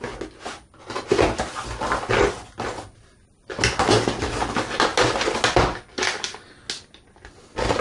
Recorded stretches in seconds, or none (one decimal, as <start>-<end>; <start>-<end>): 0.0-7.8